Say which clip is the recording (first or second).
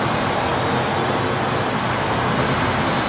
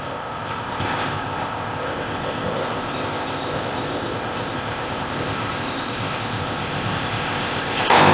first